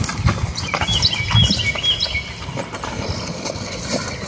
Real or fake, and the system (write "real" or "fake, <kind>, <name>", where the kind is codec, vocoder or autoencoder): real